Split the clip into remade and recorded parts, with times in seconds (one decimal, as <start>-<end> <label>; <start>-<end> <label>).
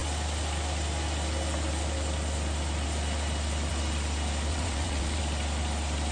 0.0-4.5 recorded; 4.5-5.2 remade; 5.2-6.1 recorded